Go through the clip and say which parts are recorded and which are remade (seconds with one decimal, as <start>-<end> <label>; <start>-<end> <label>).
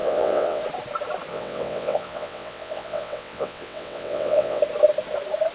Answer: 0.0-0.6 remade; 0.6-1.3 recorded; 1.3-4.6 remade; 4.6-5.5 recorded